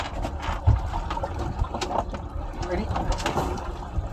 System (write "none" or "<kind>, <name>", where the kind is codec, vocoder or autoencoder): none